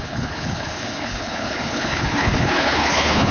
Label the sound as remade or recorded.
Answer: remade